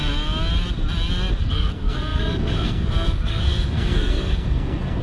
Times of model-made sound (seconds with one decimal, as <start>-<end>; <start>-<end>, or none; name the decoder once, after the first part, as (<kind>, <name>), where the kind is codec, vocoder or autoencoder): 1.4-5.0 (codec, SNAC)